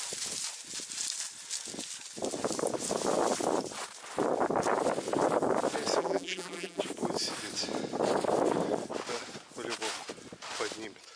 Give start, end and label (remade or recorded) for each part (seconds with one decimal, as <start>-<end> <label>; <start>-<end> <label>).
0.0-6.0 recorded; 6.0-6.8 remade; 6.8-11.2 recorded